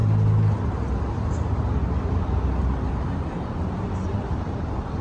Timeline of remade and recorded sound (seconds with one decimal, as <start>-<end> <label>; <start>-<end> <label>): 0.0-2.9 recorded; 2.9-5.0 remade